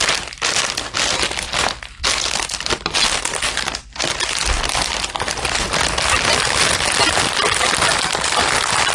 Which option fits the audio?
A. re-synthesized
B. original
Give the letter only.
B